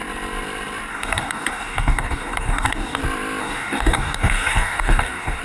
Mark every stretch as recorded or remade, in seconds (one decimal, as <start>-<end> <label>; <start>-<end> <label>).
0.0-0.9 recorded; 0.9-3.0 remade; 3.0-3.4 recorded; 3.4-5.4 remade